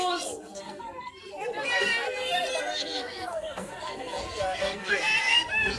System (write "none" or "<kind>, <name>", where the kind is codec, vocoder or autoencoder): codec, SNAC